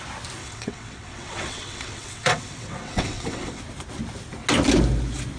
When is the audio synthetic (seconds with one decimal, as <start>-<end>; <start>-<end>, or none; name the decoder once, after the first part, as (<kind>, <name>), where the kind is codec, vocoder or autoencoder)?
0.4-3.6 (vocoder, WaveNeXt)